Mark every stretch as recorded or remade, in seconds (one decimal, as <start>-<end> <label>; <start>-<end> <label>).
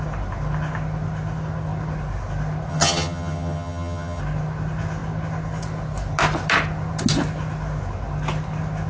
0.0-2.7 recorded; 2.7-4.2 remade; 4.2-8.9 recorded